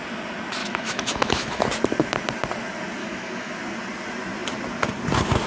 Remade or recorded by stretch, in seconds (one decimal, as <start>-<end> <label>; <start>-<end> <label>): 0.0-0.6 recorded; 0.6-1.6 remade; 1.6-3.0 recorded; 3.0-3.5 remade; 3.5-5.5 recorded